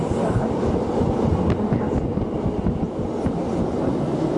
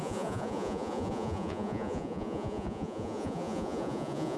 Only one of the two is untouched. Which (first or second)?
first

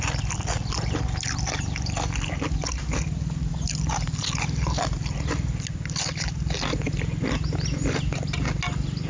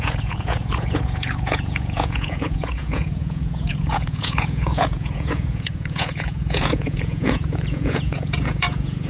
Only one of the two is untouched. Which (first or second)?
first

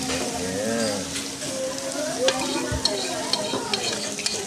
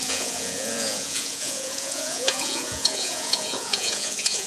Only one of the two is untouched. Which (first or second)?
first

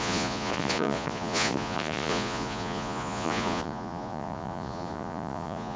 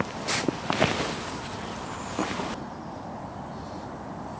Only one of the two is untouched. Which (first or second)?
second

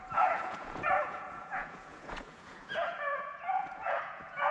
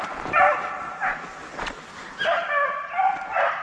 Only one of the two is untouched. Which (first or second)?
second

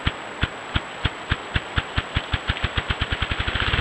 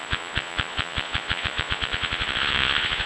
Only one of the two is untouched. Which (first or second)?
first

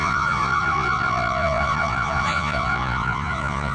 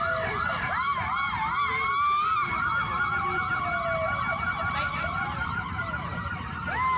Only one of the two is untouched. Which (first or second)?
second